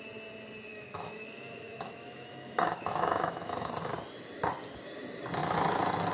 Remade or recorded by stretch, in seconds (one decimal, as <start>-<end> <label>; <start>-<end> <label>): 0.0-0.7 recorded; 0.7-3.7 remade; 3.7-6.1 recorded